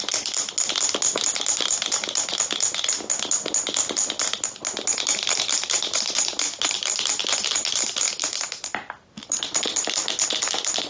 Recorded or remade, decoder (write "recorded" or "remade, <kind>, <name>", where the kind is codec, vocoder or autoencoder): recorded